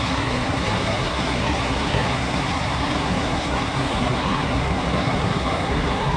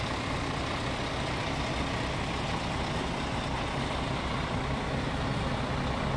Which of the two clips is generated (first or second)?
first